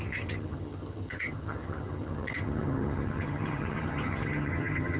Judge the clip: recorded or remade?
remade